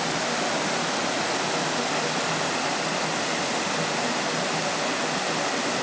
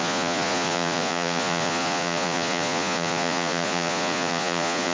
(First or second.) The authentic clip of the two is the first